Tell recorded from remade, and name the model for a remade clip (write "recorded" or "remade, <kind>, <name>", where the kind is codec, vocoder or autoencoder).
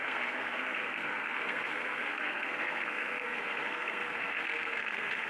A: remade, codec, SNAC